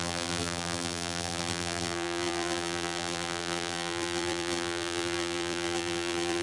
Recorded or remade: remade